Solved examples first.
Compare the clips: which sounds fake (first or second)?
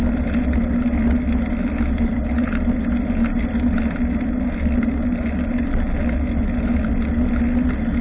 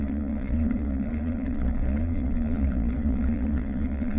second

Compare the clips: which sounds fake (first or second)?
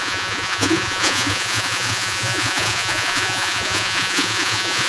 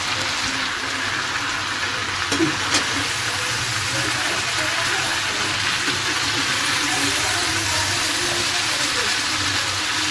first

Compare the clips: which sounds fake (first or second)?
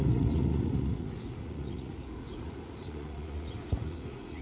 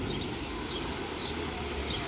first